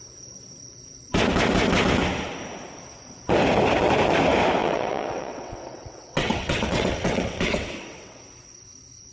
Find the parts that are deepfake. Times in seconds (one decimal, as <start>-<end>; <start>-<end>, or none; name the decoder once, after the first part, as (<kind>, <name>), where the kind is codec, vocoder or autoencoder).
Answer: 4.6-8.2 (vocoder, WaveNeXt)